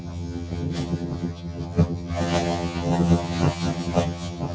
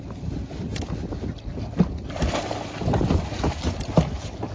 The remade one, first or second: first